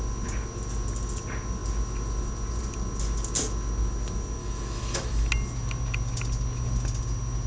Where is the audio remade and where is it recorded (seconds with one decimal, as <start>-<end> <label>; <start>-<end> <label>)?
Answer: 0.0-4.4 recorded; 4.4-5.3 remade; 5.3-7.5 recorded